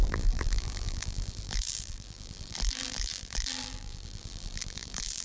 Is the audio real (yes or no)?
no